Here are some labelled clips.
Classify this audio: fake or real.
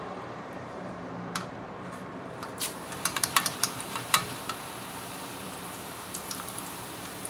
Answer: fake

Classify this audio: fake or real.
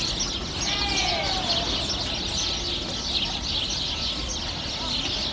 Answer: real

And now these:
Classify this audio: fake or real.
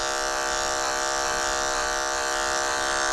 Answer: real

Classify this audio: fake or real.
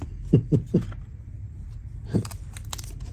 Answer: real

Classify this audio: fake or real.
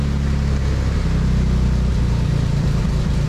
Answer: real